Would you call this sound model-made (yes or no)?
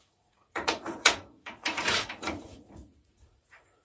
yes